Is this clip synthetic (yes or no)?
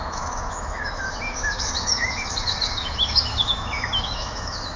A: yes